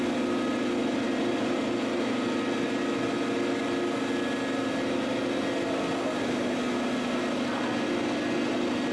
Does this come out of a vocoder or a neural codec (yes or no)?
no